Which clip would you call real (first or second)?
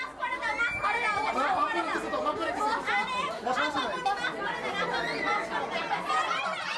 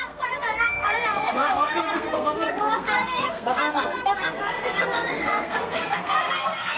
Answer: first